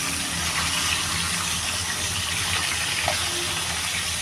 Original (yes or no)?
yes